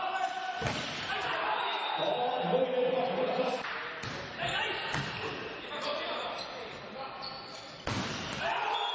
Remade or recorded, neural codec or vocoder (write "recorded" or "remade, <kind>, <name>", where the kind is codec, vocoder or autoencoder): recorded